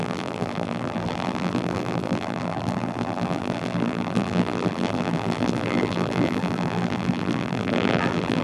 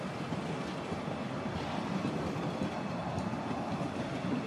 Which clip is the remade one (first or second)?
first